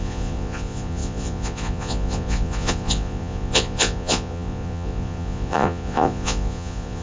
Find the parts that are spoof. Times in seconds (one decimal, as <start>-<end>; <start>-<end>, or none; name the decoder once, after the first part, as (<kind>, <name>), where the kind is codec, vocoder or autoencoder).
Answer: 0.0-7.0 (vocoder, Vocos)